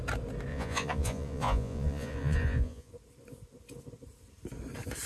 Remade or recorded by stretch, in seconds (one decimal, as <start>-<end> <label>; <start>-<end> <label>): 0.0-0.5 recorded; 0.5-2.9 remade; 2.9-5.1 recorded